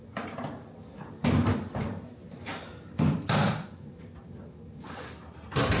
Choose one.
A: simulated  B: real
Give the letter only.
B